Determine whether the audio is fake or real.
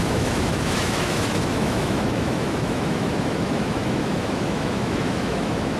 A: fake